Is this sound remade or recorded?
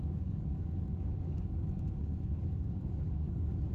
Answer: remade